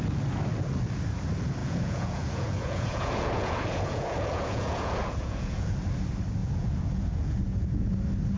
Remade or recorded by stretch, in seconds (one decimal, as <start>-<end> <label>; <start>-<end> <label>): 0.0-1.6 recorded; 1.6-5.7 remade; 5.7-6.4 recorded; 6.4-7.9 remade; 7.9-8.4 recorded